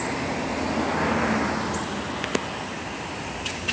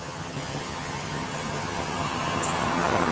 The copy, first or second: second